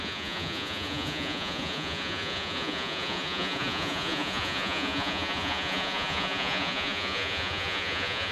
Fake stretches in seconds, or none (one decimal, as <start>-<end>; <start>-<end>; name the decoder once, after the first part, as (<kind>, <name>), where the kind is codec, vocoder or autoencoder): 0.0-8.3 (vocoder, Vocos)

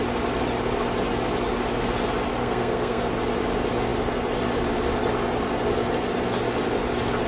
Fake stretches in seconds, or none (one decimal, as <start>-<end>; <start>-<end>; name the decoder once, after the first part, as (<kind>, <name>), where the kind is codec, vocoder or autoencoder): 2.4-3.0 (codec, SNAC)

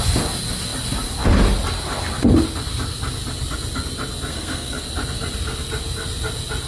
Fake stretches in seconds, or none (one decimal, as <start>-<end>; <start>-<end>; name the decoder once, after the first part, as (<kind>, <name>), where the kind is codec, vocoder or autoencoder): 4.3-4.8 (codec, SNAC)

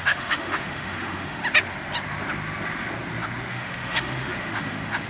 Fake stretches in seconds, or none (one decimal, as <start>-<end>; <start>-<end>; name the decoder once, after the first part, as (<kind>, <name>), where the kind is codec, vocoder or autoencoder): 0.0-1.4 (autoencoder, DAC-VAE); 3.5-5.1